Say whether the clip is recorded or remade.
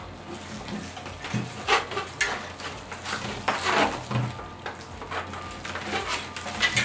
recorded